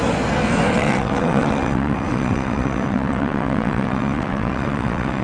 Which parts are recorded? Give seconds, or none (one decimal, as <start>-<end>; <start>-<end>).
0.0-0.7